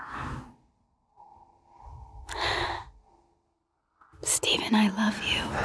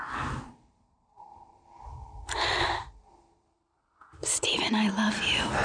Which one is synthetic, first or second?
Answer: second